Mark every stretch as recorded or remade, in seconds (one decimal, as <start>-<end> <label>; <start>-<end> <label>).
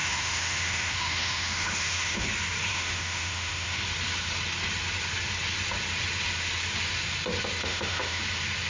0.0-2.3 remade; 2.3-2.7 recorded; 2.7-3.8 remade; 3.8-7.6 recorded; 7.6-8.2 remade; 8.2-8.7 recorded